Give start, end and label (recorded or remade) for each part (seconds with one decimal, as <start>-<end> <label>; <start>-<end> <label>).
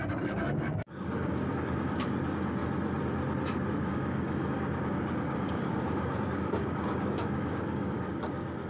0.0-2.6 remade; 2.6-3.7 recorded; 3.7-8.7 remade